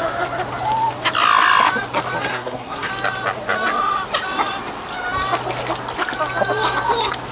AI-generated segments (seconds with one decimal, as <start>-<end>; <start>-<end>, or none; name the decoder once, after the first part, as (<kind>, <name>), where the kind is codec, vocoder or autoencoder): 2.3-2.9 (codec, SNAC)